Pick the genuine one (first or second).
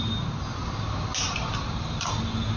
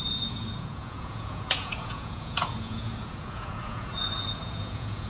first